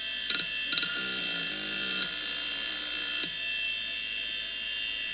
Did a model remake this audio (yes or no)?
no